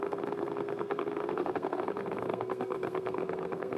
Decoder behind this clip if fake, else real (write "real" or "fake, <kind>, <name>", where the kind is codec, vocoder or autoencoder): fake, codec, SNAC